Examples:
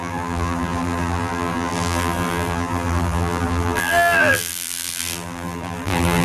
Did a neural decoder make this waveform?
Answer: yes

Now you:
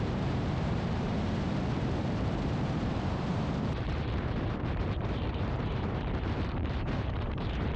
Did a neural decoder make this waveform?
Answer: yes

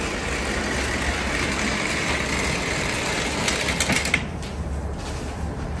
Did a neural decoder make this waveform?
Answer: no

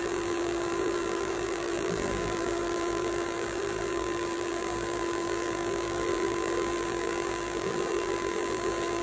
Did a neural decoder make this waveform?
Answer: yes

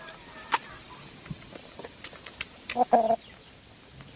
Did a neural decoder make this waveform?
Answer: no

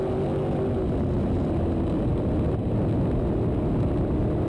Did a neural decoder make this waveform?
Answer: no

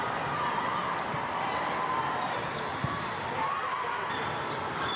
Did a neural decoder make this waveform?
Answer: no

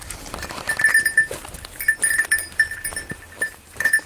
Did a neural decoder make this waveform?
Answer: yes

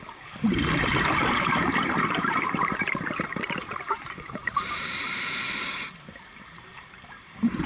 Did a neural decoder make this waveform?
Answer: yes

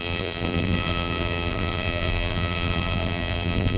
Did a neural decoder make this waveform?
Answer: yes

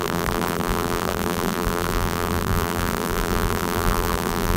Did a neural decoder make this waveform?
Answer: yes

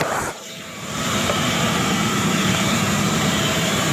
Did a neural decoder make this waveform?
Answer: yes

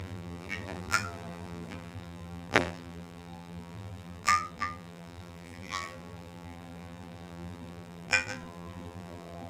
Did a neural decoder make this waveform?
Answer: yes